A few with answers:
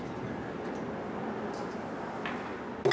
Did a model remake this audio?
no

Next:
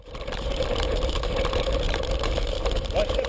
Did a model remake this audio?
yes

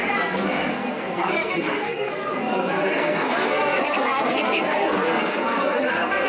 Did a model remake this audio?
yes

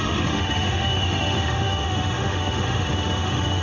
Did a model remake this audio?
yes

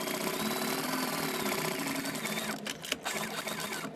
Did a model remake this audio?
no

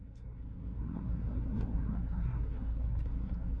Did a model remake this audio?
yes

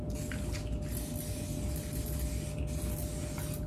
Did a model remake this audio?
no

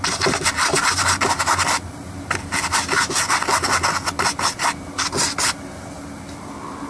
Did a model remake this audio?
no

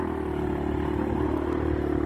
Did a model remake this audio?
no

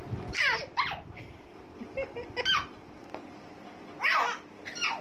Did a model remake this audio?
no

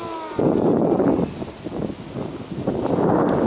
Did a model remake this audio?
no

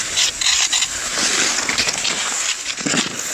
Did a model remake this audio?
no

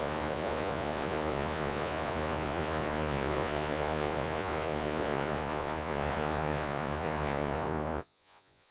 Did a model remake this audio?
yes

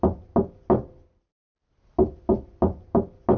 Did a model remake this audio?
no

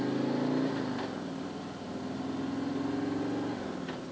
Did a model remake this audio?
no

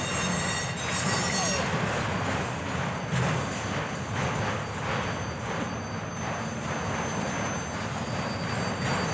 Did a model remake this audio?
no